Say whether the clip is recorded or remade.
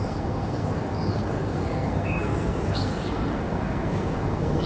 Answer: remade